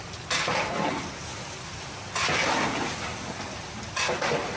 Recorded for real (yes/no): no